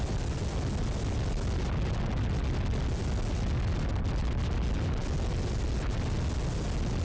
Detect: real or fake real